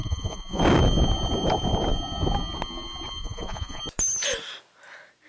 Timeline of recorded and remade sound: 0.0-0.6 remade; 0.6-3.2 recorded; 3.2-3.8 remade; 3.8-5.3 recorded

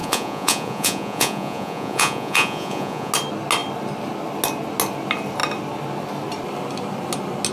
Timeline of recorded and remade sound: 0.0-3.1 remade; 3.1-7.5 recorded

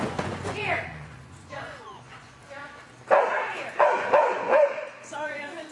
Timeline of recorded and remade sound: 0.0-2.4 remade; 2.4-3.7 recorded; 3.7-5.7 remade

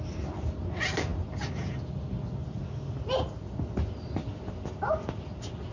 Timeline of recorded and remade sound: 0.0-5.7 recorded

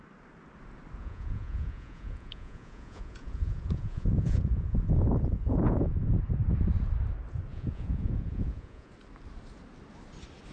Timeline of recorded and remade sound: 0.0-1.0 recorded; 1.0-6.1 remade; 6.1-7.5 recorded; 7.5-8.9 remade; 8.9-10.5 recorded

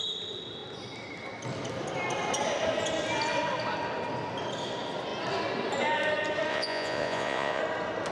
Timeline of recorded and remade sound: 0.0-6.5 recorded; 6.5-7.6 remade; 7.6-8.1 recorded